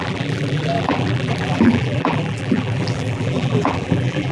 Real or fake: fake